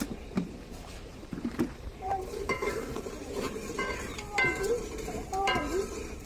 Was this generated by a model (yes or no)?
yes